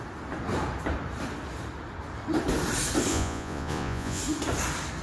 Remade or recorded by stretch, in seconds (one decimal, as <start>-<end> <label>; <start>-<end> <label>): 0.0-3.1 recorded; 3.1-4.2 remade; 4.2-5.0 recorded